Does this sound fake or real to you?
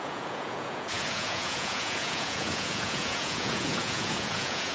fake